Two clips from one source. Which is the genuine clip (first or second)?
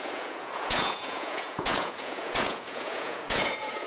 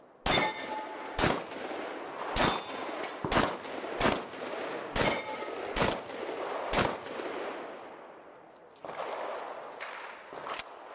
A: second